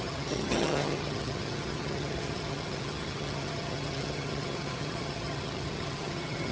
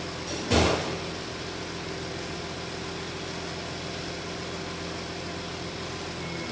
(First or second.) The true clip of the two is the second